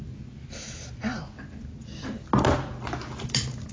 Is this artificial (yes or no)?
no